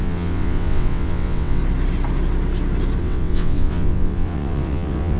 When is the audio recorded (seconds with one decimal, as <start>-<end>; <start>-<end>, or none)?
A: 1.6-3.0